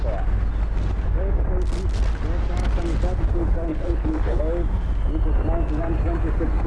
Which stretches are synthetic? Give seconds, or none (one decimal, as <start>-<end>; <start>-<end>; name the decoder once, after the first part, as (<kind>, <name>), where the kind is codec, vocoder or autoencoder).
3.7-4.4 (codec, HILCodec)